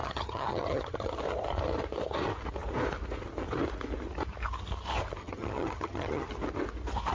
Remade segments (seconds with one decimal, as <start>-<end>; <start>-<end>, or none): 0.0-1.2; 5.2-6.3